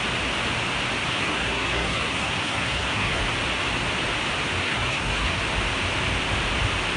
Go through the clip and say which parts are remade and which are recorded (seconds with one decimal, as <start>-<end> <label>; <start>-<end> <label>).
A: 0.0-1.1 recorded; 1.1-3.2 remade; 3.2-4.6 recorded; 4.6-5.4 remade; 5.4-7.0 recorded